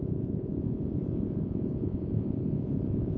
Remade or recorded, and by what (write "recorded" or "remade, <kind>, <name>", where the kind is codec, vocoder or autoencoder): remade, vocoder, Vocos